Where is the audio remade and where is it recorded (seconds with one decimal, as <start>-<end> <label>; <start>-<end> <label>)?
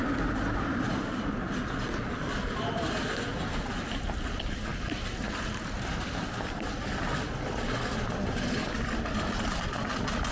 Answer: 0.0-10.3 recorded